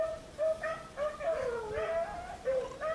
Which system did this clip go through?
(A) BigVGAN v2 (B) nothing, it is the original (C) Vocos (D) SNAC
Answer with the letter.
B